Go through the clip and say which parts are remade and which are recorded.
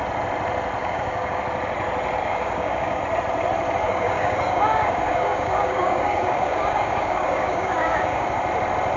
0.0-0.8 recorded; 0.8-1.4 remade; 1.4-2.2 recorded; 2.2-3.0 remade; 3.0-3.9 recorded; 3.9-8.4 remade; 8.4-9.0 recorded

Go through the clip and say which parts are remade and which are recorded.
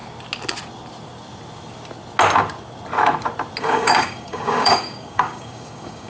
0.0-3.6 recorded; 3.6-6.1 remade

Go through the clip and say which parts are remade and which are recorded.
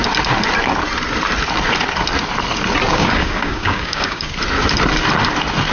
0.0-2.9 recorded; 2.9-4.3 remade; 4.3-5.7 recorded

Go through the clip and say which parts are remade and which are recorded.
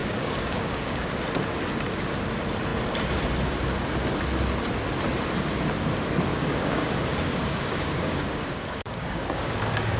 0.0-1.1 remade; 1.1-6.3 recorded; 6.3-10.0 remade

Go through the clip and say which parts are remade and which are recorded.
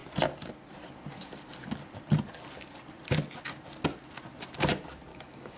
0.0-5.1 recorded; 5.1-5.6 remade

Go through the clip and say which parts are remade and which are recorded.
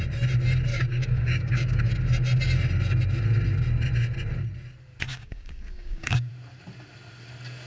0.0-0.7 recorded; 0.7-1.9 remade; 1.9-5.1 recorded; 5.1-6.3 remade; 6.3-7.7 recorded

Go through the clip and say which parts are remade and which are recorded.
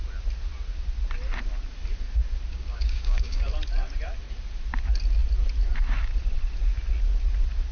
0.0-2.5 recorded; 2.5-3.5 remade; 3.5-7.7 recorded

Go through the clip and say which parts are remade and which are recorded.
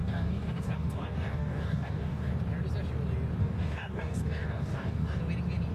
0.0-2.3 remade; 2.3-3.4 recorded; 3.4-5.2 remade; 5.2-5.7 recorded